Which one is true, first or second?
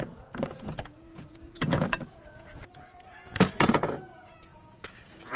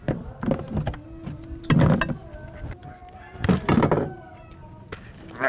second